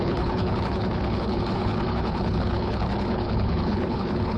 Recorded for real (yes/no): no